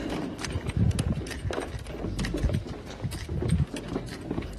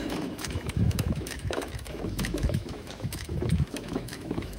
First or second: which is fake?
second